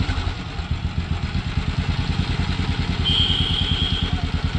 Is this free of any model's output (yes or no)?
yes